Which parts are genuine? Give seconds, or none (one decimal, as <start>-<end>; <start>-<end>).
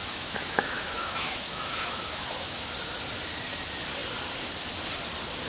2.7-5.5